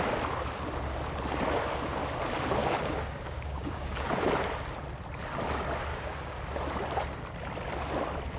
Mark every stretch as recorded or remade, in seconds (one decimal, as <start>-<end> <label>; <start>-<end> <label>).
0.0-2.6 recorded; 2.6-4.1 remade; 4.1-5.9 recorded; 5.9-6.4 remade; 6.4-8.4 recorded